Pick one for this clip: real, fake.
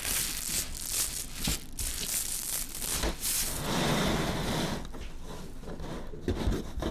real